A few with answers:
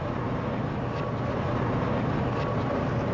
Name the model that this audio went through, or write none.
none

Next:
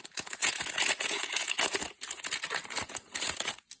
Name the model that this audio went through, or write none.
vocoder, Vocos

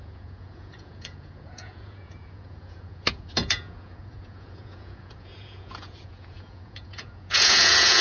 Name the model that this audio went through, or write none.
vocoder, Vocos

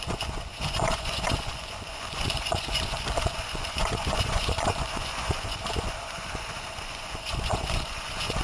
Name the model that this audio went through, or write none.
vocoder, Vocos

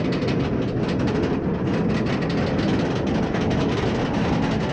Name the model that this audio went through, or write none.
none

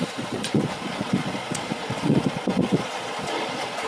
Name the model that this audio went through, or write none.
vocoder, Vocos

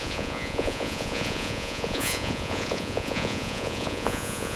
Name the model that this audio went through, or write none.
vocoder, Vocos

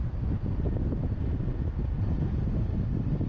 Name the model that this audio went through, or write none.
none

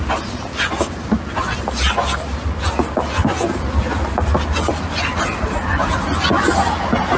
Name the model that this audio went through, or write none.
none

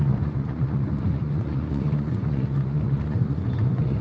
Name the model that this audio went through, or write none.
vocoder, Vocos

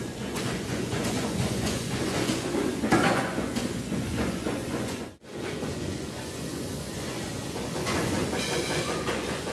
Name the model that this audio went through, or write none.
vocoder, Vocos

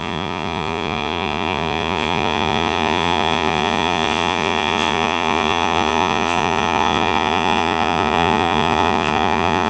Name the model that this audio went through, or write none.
vocoder, Vocos